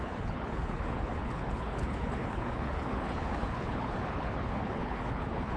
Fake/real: fake